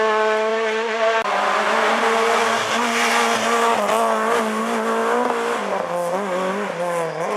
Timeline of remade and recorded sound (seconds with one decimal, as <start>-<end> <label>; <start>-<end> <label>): 0.0-7.4 recorded